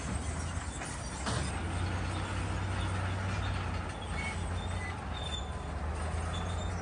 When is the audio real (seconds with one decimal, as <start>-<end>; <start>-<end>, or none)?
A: 0.0-6.8